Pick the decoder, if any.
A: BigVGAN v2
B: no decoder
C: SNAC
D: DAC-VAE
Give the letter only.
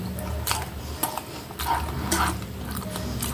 B